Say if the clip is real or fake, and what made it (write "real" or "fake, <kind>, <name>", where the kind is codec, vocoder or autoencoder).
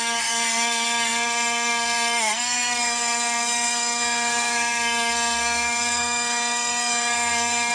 fake, codec, SNAC